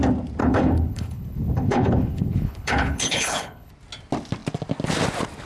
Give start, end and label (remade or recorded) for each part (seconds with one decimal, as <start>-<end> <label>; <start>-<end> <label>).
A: 0.0-0.4 recorded; 0.4-3.7 remade; 3.7-5.5 recorded